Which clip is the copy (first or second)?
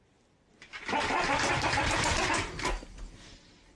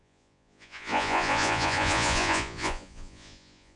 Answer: second